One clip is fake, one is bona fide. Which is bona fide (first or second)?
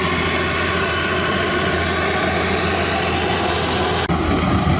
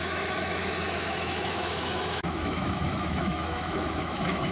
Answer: first